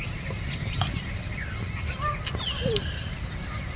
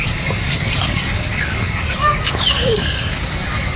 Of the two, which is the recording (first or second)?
first